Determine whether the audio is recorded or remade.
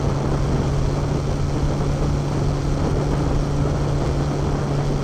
recorded